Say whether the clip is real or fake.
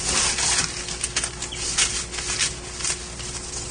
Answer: real